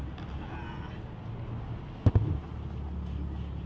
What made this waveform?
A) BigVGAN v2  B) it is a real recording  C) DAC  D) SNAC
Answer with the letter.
B